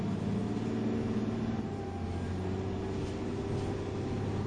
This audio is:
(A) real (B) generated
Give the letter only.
A